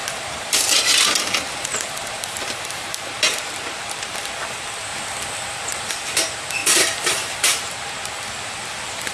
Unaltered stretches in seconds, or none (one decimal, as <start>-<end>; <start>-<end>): 4.9-5.9